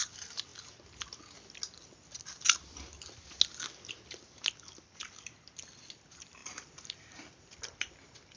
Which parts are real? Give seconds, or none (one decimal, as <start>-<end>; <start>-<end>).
0.0-8.4